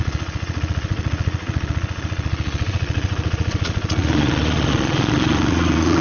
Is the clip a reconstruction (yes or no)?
yes